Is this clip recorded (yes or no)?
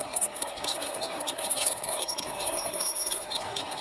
no